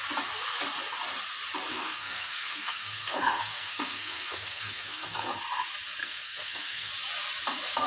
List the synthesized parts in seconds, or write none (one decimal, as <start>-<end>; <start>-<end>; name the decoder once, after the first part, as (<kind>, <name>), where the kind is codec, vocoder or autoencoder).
1.7-5.3 (codec, SNAC); 6.0-6.9